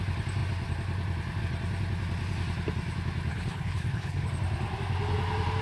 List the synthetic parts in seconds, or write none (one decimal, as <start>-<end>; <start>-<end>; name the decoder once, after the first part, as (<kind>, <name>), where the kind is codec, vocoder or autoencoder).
3.3-4.3 (codec, HILCodec)